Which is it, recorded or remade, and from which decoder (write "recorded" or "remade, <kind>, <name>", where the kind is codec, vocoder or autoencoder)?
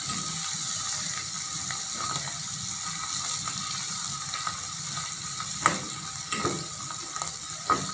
recorded